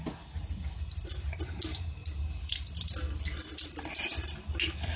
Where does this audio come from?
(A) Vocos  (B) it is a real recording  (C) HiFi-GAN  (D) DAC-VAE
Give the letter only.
B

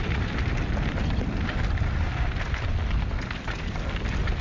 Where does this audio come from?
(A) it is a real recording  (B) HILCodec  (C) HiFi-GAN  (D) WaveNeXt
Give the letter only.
A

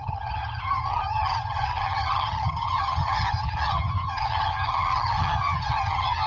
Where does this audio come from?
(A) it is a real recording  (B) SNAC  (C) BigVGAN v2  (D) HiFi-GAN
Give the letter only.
D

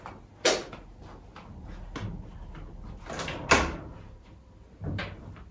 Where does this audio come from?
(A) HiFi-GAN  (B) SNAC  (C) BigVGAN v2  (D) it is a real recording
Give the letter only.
D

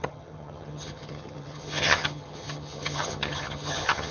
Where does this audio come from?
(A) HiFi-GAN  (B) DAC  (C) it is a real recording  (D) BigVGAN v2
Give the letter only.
A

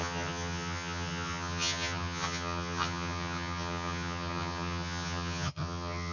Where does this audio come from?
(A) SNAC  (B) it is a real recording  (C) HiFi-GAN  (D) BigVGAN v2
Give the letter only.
C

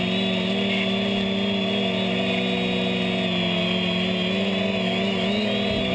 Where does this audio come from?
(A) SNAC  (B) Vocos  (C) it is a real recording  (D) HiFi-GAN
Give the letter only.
C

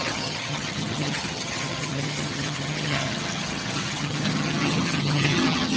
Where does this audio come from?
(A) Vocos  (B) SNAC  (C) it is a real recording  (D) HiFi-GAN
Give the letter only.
D